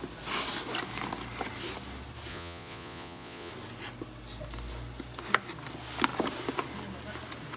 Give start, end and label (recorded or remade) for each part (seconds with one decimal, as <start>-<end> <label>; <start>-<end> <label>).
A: 0.0-2.3 recorded; 2.3-3.5 remade; 3.5-7.6 recorded